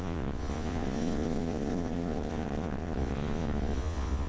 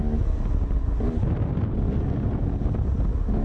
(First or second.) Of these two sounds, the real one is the second